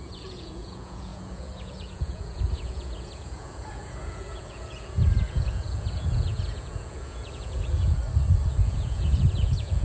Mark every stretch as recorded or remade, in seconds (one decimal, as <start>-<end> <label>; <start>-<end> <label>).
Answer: 0.0-8.0 remade; 8.0-8.6 recorded; 8.6-9.8 remade